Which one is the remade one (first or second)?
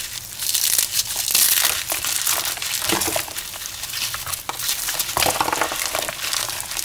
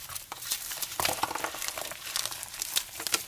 second